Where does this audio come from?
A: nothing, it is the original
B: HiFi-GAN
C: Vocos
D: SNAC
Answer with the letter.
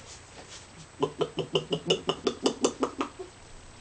A